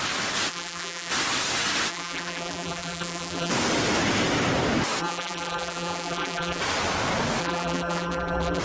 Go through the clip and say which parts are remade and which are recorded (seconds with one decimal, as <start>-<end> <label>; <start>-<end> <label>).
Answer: 0.0-0.5 recorded; 0.5-1.1 remade; 1.1-1.9 recorded; 1.9-3.5 remade; 3.5-5.0 recorded; 5.0-6.6 remade; 6.6-7.4 recorded; 7.4-8.6 remade